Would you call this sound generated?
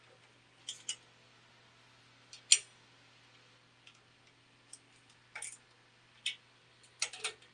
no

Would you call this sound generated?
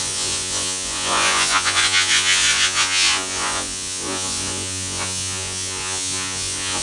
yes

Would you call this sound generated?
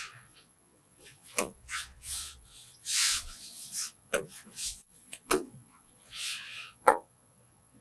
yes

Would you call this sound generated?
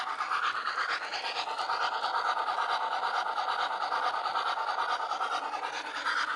no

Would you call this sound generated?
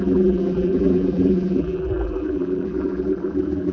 yes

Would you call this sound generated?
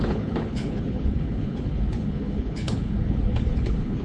yes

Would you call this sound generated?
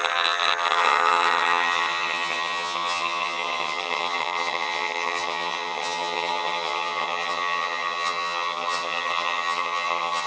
yes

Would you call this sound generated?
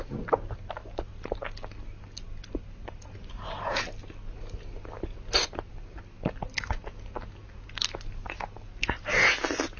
no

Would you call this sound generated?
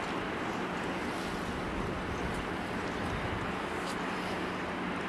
no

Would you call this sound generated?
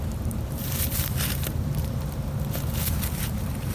yes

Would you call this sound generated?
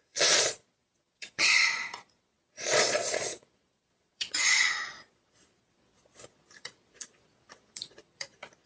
yes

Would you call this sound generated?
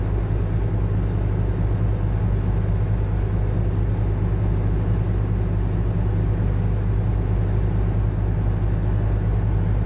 no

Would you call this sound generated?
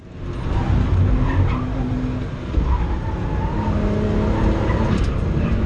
no